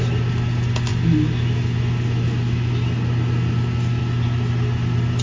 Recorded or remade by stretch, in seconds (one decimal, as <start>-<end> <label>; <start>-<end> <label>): 0.0-5.2 recorded